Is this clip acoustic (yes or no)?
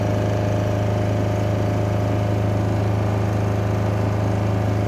yes